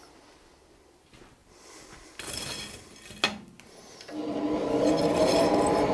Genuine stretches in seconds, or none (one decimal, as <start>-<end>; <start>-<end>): 0.0-5.9